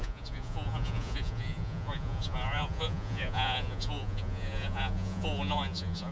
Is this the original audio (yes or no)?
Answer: no